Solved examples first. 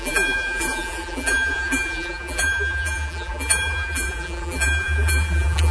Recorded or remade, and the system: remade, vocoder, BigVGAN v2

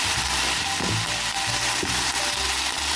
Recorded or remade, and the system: recorded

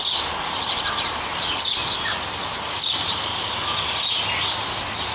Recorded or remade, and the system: recorded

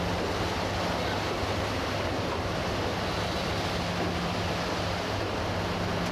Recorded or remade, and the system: recorded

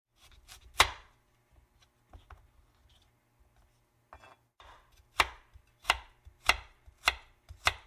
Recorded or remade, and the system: recorded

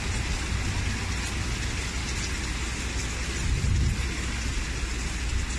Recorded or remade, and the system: recorded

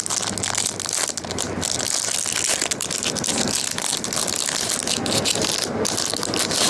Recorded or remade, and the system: recorded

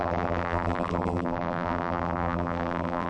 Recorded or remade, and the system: remade, vocoder, BigVGAN v2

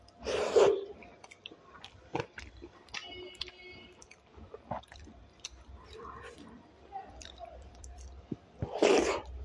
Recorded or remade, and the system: remade, vocoder, BigVGAN v2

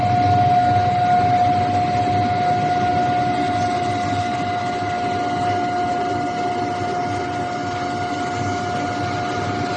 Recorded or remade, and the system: recorded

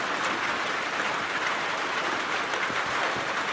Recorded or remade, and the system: recorded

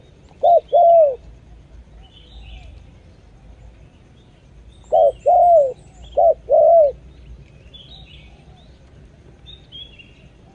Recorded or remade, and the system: recorded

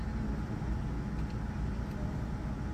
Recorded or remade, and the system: recorded